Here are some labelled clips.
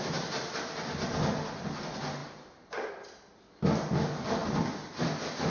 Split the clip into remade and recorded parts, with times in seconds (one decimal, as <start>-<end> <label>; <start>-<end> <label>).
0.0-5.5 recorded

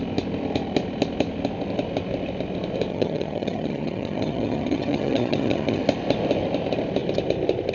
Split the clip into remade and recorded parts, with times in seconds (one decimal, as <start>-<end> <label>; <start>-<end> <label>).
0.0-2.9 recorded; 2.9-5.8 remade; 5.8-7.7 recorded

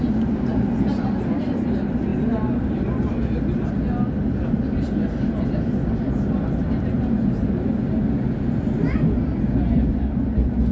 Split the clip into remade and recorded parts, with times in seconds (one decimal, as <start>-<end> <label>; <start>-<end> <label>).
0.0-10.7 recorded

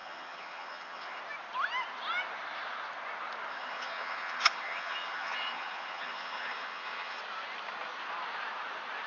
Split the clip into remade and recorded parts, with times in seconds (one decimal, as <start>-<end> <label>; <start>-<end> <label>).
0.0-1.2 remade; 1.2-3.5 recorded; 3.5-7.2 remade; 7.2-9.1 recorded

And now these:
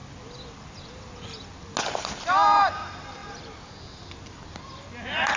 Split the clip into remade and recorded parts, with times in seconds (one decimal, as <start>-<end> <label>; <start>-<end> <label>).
0.0-5.4 recorded

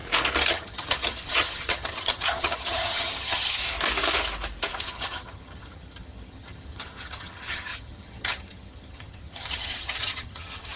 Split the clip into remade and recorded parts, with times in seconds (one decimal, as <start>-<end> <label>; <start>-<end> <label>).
0.0-0.5 recorded; 0.5-3.6 remade; 3.6-4.8 recorded; 4.8-10.8 remade